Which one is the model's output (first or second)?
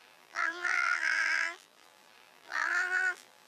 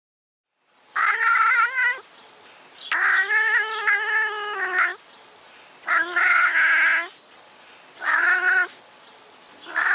first